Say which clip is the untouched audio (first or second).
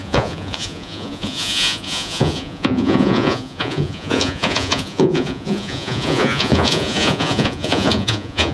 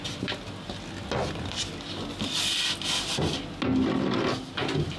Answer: second